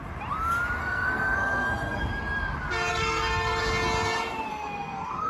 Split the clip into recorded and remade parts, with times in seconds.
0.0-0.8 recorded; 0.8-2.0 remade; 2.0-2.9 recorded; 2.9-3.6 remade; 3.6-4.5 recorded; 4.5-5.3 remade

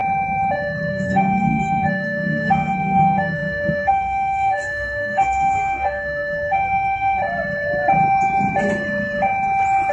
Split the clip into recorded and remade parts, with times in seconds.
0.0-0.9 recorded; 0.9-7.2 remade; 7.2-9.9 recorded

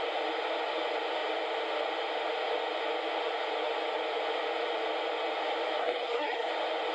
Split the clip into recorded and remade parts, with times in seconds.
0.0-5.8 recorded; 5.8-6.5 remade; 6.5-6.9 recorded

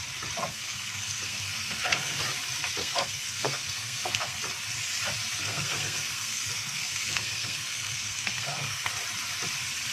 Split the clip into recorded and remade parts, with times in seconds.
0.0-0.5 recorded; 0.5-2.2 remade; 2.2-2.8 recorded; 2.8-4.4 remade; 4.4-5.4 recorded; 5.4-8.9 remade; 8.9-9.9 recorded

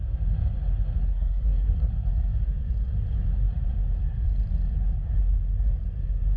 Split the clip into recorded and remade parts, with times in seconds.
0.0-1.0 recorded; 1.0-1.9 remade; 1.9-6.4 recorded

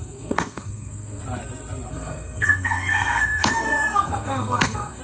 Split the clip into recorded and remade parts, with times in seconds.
0.0-1.2 remade; 1.2-1.9 recorded; 1.9-5.0 remade

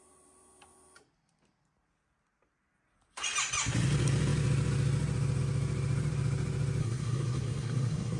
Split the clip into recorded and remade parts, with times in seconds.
0.0-6.8 recorded; 6.8-8.2 remade

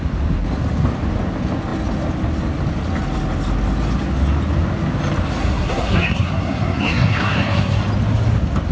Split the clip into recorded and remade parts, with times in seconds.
0.0-5.4 recorded; 5.4-7.8 remade; 7.8-8.7 recorded